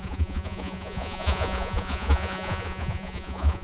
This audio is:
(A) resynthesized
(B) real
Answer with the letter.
A